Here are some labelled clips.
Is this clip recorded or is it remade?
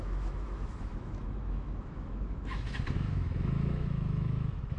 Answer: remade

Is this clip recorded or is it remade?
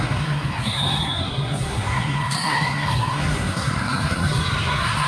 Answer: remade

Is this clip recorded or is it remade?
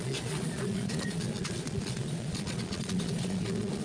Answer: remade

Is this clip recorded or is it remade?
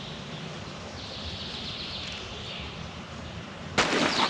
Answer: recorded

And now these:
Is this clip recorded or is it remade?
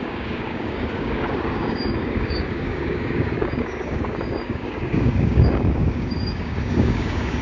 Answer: remade